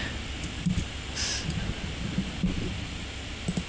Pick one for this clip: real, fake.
real